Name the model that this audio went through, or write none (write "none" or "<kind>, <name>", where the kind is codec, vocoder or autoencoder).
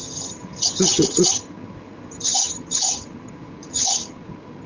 vocoder, HiFi-GAN